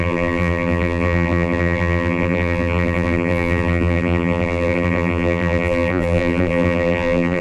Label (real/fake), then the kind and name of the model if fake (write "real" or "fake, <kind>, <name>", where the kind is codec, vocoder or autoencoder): fake, vocoder, BigVGAN v2